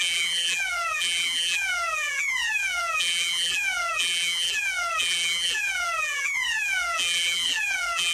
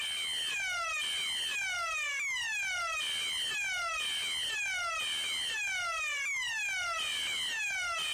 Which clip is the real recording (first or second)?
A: second